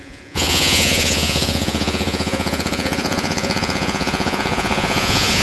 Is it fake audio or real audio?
fake